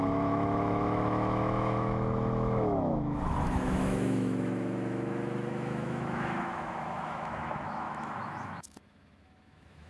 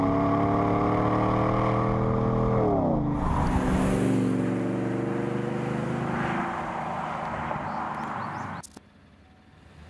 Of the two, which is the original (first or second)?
second